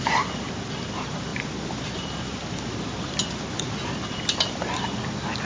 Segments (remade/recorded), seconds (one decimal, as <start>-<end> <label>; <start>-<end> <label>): 0.0-5.4 recorded